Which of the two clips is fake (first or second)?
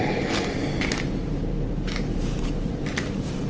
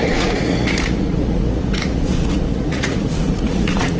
second